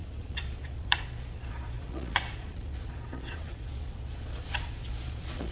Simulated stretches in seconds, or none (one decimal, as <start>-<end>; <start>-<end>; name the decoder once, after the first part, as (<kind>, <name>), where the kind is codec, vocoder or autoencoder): 0.0-5.5 (vocoder, Vocos)